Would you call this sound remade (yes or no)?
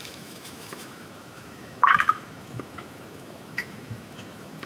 yes